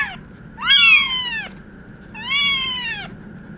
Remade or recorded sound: recorded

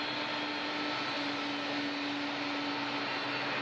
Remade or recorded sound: recorded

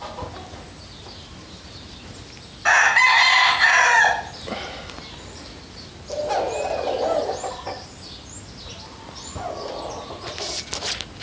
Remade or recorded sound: recorded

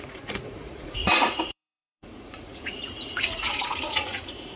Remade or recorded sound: remade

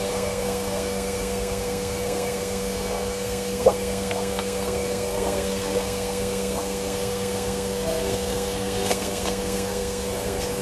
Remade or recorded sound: remade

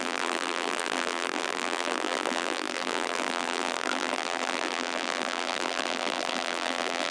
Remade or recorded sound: remade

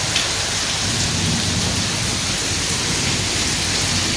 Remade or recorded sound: recorded